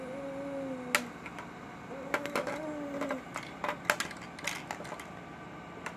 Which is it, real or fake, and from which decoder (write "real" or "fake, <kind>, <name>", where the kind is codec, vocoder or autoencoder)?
real